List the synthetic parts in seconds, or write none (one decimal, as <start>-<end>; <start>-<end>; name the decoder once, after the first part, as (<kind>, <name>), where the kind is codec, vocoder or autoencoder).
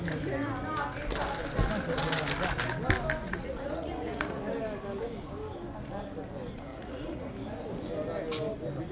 3.2-4.4 (vocoder, Vocos); 6.7-7.3